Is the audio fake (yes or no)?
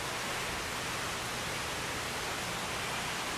no